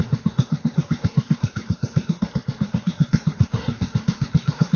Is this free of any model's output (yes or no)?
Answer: no